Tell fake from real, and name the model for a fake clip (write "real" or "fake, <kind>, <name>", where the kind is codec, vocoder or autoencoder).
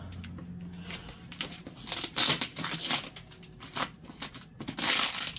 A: real